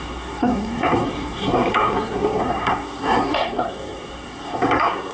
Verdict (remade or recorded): remade